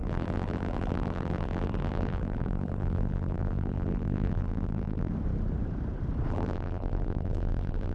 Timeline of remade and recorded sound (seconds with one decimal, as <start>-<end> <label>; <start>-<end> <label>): 0.0-5.1 remade; 5.1-6.3 recorded; 6.3-7.9 remade